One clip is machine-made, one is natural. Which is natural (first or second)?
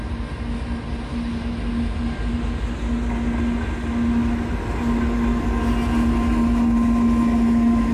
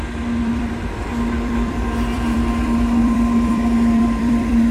first